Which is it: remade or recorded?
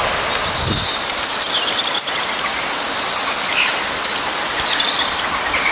recorded